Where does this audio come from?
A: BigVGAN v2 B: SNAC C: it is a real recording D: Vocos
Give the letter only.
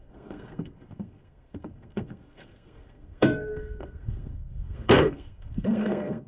B